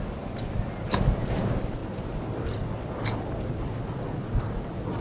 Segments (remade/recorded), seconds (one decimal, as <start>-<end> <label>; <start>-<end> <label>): 0.0-5.0 recorded